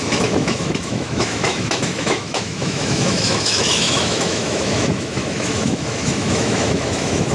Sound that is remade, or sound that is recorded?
remade